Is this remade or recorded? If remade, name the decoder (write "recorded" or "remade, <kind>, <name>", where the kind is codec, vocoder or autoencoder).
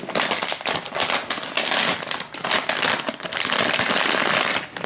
recorded